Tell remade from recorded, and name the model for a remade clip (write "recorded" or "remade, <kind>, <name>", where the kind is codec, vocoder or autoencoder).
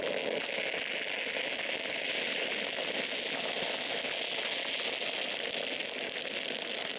recorded